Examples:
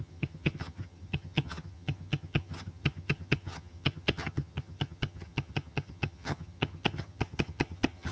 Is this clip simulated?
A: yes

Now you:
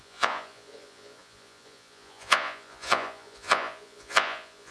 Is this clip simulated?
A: yes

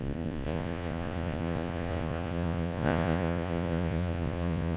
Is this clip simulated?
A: yes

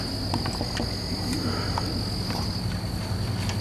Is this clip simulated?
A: no